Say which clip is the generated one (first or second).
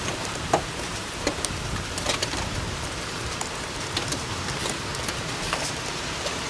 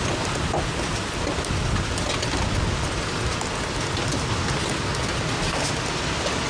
first